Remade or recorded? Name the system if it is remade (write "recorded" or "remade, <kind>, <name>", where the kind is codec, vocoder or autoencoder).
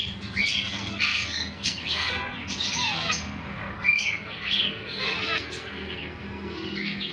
remade, codec, SNAC